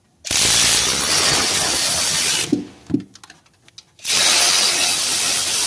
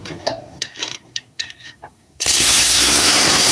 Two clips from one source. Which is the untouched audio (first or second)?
first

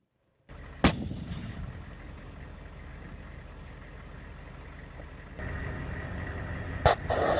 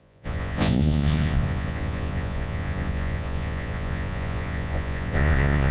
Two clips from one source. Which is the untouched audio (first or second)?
first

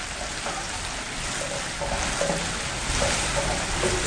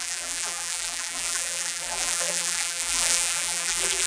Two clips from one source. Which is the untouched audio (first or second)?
first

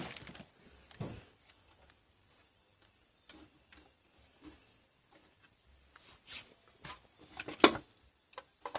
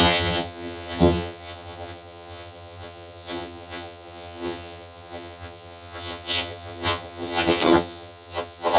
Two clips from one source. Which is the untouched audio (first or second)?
first